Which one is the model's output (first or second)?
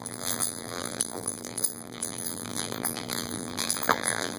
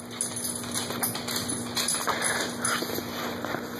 first